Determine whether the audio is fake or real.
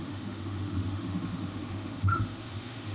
fake